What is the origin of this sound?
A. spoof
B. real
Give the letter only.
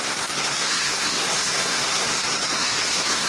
A